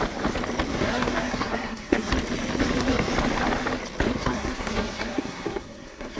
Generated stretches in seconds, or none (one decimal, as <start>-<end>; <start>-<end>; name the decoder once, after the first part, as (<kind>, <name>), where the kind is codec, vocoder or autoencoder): 0.7-2.1 (codec, SNAC); 2.6-3.1; 4.1-6.2